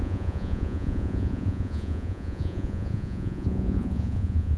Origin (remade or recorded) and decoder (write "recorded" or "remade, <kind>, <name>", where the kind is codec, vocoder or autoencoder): remade, vocoder, Vocos